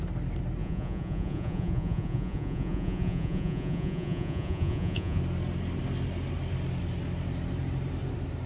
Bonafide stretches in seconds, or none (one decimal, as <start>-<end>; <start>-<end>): 0.0-0.6; 5.2-8.5

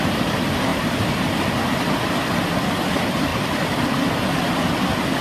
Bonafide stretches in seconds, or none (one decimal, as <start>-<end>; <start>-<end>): 0.0-5.2

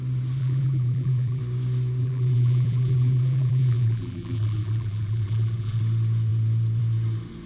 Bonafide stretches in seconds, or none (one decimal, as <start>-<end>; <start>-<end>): 0.0-0.4; 1.4-2.0; 5.8-7.5

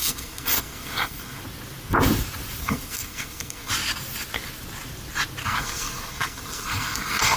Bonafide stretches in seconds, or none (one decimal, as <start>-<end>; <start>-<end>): 1.4-2.6; 3.7-5.4

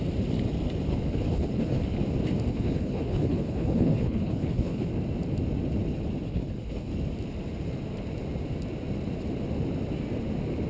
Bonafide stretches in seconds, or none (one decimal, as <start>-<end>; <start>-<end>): 0.0-0.9; 2.0-2.5; 4.9-6.3; 6.9-10.7

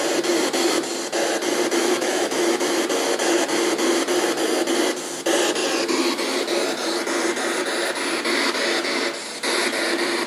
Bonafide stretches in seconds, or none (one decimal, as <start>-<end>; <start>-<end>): 0.0-1.8; 2.6-10.3

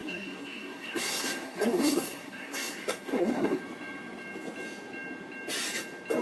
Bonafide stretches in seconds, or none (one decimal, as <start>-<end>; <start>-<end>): 3.6-6.2

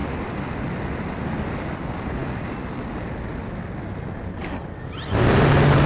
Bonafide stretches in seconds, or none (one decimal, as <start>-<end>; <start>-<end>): 0.0-5.9